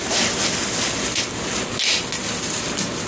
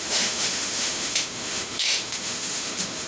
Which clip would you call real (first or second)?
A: first